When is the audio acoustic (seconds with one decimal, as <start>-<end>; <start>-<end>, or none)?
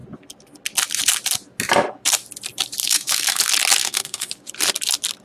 0.0-2.8; 3.4-3.8; 4.3-5.2